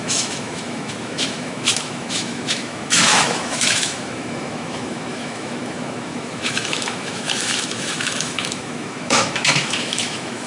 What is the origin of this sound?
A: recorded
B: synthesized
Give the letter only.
B